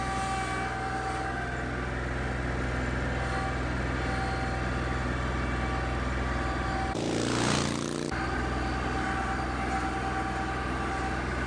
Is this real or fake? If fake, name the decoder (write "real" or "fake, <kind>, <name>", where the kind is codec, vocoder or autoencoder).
real